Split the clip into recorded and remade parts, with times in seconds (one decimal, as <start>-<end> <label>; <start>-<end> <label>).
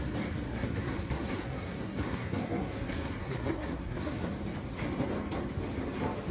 0.0-0.5 recorded; 0.5-4.3 remade; 4.3-6.3 recorded